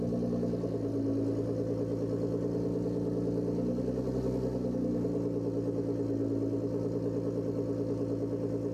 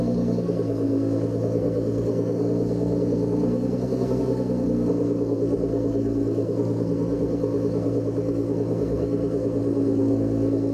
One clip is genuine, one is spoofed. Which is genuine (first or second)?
first